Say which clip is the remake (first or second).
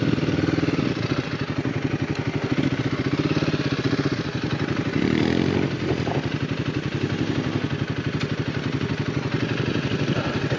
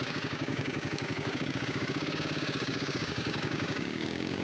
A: second